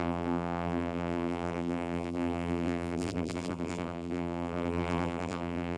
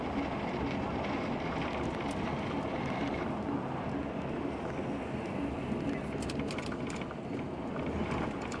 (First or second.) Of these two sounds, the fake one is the first